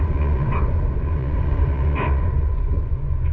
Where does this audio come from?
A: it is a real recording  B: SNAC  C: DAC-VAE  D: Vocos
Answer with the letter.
D